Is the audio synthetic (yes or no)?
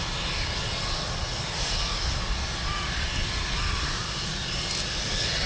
no